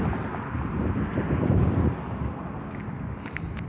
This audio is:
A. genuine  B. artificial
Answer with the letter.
A